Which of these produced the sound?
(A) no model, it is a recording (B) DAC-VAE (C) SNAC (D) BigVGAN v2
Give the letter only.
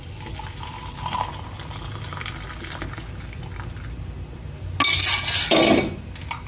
A